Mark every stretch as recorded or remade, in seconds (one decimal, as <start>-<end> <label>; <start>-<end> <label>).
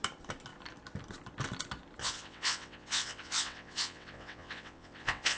0.0-2.0 recorded; 2.0-5.4 remade